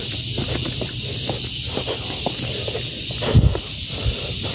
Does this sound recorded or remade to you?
recorded